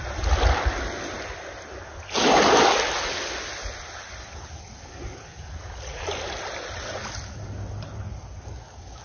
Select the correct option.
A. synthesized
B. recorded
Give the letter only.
B